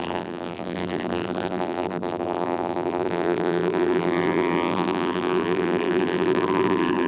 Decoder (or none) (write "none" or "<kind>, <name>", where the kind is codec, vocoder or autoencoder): vocoder, BigVGAN v2